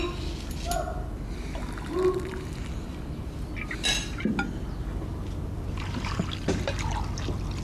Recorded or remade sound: recorded